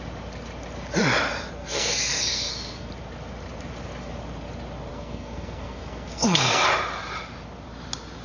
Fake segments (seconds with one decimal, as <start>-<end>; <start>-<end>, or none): 1.6-2.9; 4.9-6.6